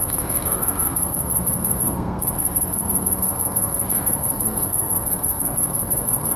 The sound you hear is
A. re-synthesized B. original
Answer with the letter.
A